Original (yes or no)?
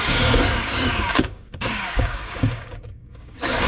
no